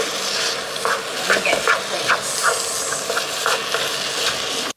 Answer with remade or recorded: recorded